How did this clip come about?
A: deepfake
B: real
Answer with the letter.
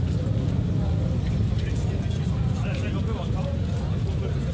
B